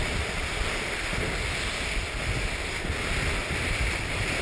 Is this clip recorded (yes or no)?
yes